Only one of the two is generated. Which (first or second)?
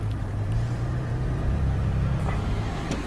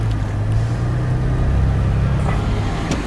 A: first